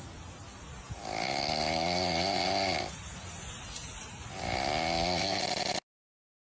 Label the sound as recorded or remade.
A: recorded